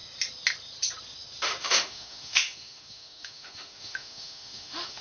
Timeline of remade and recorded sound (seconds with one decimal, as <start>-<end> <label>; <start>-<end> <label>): 0.0-1.6 recorded; 1.6-5.0 remade

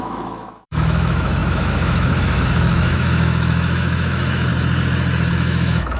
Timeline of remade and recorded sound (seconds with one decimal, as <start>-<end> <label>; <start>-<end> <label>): 0.0-4.5 remade; 4.5-5.3 recorded; 5.3-6.0 remade

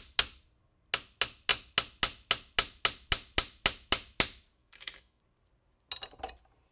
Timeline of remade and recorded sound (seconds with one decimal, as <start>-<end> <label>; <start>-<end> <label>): 0.0-4.6 recorded; 4.6-5.2 remade; 5.2-6.7 recorded

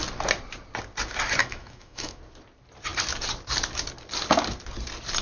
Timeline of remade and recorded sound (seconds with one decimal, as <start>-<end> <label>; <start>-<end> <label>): 0.0-1.4 recorded; 1.4-2.2 remade; 2.2-5.2 recorded

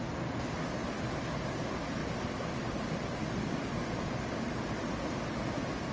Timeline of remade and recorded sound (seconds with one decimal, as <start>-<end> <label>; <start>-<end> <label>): 0.0-5.9 recorded